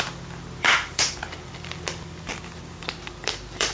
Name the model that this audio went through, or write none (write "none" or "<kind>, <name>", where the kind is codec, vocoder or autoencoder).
vocoder, BigVGAN v2